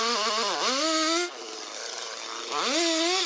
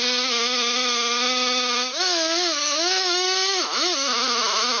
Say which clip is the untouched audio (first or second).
first